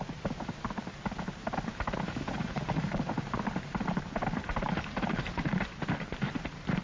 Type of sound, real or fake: fake